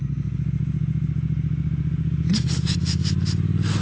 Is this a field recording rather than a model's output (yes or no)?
yes